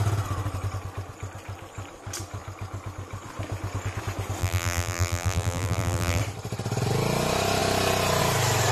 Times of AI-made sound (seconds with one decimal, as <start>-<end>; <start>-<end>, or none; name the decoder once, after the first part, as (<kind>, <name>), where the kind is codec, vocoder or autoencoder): 4.4-6.2 (vocoder, BigVGAN v2)